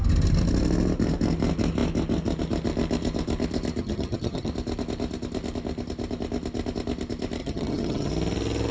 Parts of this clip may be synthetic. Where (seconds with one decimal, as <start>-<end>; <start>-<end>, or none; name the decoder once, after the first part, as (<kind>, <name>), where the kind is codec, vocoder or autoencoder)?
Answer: 3.8-4.5 (vocoder, HiFi-GAN); 7.4-8.1

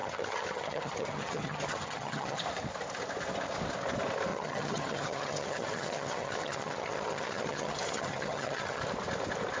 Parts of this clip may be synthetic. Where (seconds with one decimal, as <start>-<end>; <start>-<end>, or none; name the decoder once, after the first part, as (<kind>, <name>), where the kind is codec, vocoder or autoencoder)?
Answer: 0.0-2.4 (vocoder, HiFi-GAN); 4.3-8.8

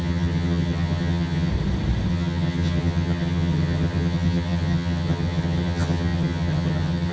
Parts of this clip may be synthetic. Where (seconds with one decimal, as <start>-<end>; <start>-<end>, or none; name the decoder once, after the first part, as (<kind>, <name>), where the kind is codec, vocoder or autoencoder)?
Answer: 0.0-1.5 (vocoder, HiFi-GAN); 2.1-7.1

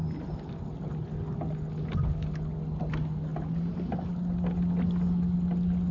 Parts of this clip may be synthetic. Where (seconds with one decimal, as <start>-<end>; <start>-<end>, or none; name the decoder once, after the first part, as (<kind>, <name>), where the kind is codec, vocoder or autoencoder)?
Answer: none

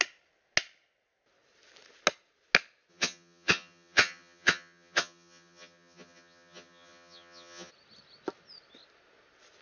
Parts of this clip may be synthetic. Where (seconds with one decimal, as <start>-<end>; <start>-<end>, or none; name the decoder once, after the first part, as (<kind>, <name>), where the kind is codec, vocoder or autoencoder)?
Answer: 2.9-7.7 (vocoder, HiFi-GAN)

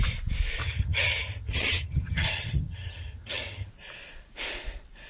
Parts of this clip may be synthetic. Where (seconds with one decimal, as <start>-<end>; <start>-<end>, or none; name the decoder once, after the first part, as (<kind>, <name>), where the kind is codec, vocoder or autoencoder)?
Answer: 0.6-3.7 (vocoder, HiFi-GAN)

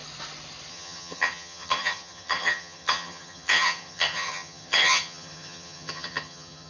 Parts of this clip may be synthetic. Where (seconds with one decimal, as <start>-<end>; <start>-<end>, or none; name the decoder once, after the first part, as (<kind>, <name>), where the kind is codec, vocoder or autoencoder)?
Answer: 0.7-6.7 (vocoder, HiFi-GAN)